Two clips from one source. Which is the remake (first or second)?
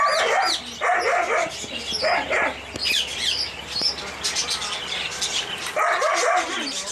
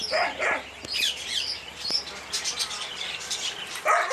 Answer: second